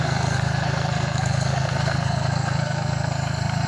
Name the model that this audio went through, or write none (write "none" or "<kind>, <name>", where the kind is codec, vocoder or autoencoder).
codec, SNAC